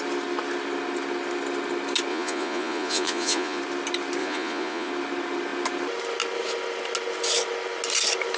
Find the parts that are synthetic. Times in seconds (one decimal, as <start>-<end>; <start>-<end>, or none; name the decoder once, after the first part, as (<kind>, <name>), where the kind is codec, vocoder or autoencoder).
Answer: 2.1-3.6 (vocoder, Vocos); 4.2-4.9

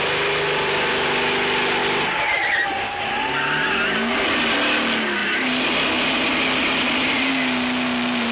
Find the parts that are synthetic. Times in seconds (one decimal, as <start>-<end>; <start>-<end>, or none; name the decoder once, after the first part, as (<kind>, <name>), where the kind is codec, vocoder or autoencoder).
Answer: none

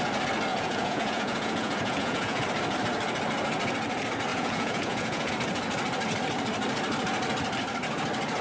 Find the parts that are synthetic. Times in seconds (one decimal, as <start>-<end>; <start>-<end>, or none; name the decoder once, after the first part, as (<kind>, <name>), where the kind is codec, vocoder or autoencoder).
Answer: 0.5-2.4 (vocoder, Vocos); 4.3-5.3

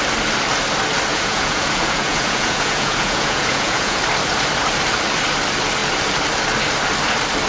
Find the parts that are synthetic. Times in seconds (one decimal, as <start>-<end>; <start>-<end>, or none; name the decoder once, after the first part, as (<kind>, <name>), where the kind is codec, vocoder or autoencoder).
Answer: 1.1-4.0 (vocoder, Vocos)

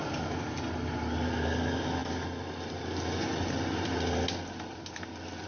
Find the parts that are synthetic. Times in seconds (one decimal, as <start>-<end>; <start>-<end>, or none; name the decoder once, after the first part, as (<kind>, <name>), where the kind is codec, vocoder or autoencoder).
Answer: none

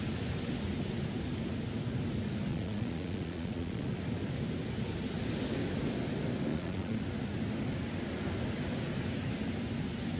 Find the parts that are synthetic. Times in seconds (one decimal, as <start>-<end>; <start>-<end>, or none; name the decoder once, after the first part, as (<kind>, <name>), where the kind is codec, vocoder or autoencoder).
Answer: 2.5-4.0 (vocoder, Vocos); 6.5-7.0

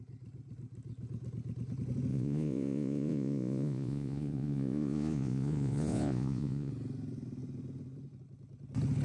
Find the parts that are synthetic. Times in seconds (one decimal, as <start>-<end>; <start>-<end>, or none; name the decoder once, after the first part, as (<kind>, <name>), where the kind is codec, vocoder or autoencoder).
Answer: 2.1-6.7 (vocoder, Vocos)

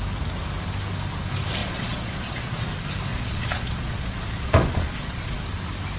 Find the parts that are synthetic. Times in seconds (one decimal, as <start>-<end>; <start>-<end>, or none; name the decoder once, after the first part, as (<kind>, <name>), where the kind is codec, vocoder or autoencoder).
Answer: 1.6-2.7 (vocoder, Vocos); 3.1-5.4